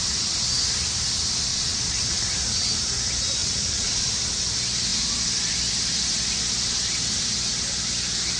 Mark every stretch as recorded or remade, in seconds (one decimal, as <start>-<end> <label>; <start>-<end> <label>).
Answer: 0.0-1.5 recorded; 1.5-2.2 remade; 2.2-3.4 recorded; 3.4-4.1 remade; 4.1-8.4 recorded